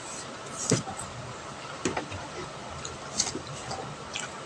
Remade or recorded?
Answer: recorded